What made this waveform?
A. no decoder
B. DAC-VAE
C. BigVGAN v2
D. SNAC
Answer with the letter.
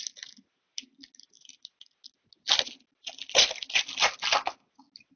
A